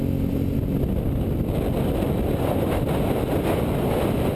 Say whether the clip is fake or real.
real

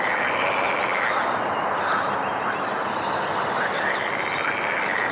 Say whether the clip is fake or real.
real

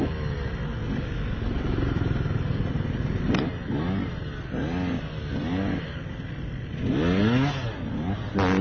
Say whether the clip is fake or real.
real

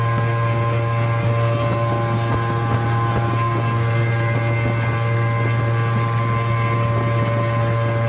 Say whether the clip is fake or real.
real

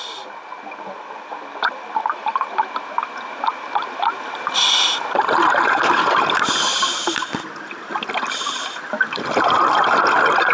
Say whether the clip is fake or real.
real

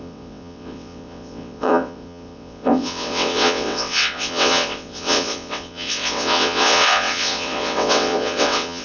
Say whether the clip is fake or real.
fake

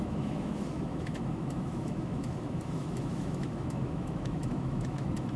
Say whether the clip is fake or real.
fake